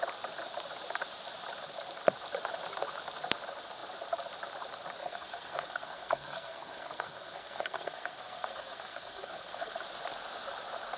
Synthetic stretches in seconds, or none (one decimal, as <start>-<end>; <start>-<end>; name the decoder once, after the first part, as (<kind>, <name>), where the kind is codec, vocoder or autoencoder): 5.0-9.8 (codec, SNAC)